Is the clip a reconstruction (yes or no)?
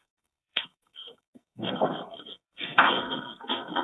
yes